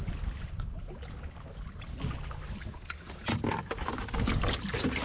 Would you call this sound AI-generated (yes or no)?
no